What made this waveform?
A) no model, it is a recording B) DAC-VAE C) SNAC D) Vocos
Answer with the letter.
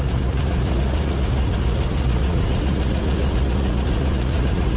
D